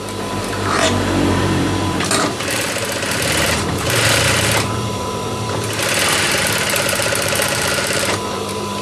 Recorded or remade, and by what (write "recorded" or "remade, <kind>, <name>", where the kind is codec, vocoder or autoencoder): remade, vocoder, BigVGAN v2